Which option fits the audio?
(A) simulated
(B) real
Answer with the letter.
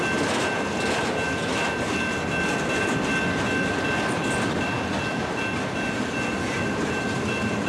B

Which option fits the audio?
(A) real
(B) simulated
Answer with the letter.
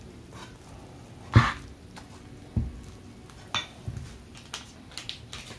A